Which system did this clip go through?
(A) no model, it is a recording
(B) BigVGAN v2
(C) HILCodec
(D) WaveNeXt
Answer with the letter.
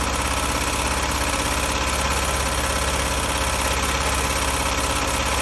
A